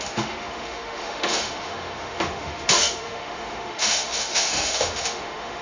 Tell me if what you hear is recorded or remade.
remade